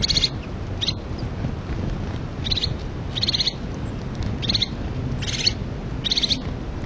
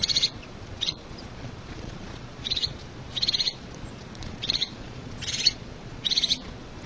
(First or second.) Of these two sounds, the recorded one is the first